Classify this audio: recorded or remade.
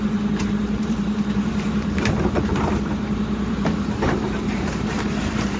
remade